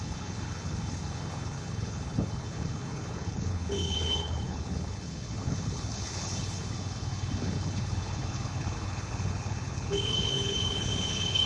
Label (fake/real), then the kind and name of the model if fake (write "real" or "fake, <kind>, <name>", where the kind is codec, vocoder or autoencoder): fake, codec, HILCodec